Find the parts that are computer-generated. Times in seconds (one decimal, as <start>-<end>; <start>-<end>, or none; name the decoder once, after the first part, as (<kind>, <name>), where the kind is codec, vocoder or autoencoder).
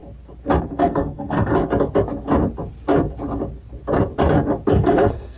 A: 0.6-1.5 (codec, SNAC); 4.7-5.4